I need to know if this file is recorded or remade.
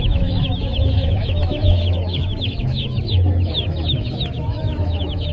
remade